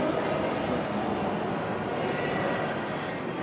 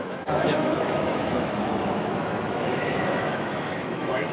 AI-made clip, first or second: second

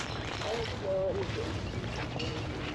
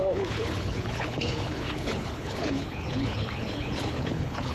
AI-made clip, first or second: second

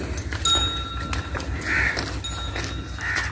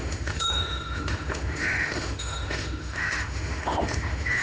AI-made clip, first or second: second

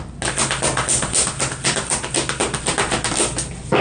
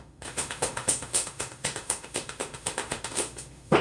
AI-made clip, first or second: second